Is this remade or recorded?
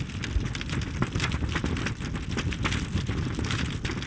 recorded